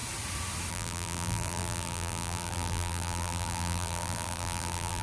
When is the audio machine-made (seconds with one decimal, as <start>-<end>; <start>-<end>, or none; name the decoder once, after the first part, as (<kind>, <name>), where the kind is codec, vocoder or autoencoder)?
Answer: 0.7-5.0 (vocoder, BigVGAN v2)

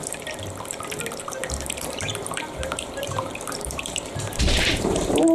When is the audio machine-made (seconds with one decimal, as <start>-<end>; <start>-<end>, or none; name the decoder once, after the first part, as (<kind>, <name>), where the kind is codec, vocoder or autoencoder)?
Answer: 0.0-5.3 (vocoder, BigVGAN v2)

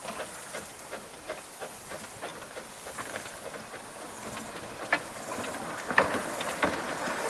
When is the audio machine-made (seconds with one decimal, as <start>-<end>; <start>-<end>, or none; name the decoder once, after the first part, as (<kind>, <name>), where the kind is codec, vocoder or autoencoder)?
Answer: none